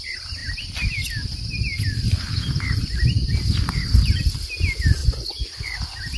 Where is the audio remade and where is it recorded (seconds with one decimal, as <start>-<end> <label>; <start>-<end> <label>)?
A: 0.0-5.0 recorded; 5.0-5.8 remade; 5.8-6.2 recorded